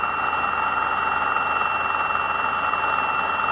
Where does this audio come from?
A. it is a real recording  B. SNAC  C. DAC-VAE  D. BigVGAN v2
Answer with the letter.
A